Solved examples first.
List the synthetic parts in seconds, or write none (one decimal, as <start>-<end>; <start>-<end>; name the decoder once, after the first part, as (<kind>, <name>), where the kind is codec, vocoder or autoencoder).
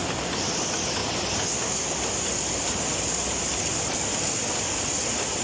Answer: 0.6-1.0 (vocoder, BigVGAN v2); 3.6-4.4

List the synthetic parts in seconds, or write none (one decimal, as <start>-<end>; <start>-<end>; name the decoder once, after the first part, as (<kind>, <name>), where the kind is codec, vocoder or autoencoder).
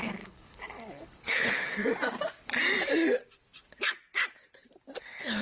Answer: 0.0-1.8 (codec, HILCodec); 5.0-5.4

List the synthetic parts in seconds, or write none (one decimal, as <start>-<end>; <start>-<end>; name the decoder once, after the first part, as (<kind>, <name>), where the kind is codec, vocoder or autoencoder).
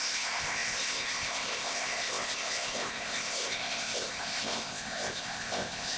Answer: 0.0-6.0 (codec, ZipCodec)